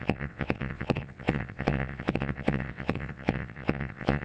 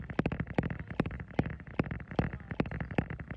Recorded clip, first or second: second